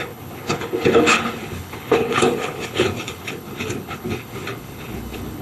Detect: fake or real fake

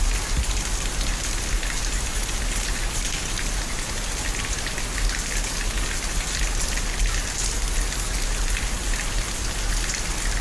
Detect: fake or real real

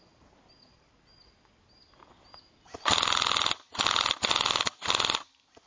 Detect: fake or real real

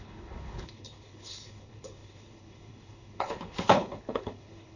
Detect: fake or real fake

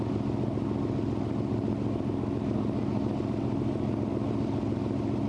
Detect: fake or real real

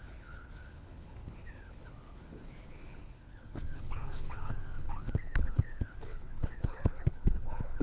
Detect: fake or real fake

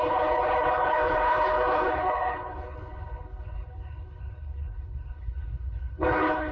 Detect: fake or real fake